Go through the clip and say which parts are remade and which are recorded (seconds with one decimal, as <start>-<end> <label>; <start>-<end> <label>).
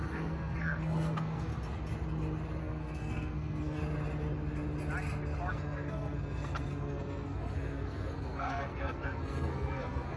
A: 0.0-1.5 remade; 1.5-2.6 recorded; 2.6-3.8 remade; 3.8-5.5 recorded; 5.5-10.2 remade